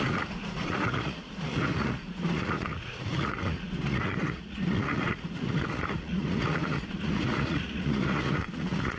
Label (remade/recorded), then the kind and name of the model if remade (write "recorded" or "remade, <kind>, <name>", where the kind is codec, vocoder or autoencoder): remade, vocoder, Vocos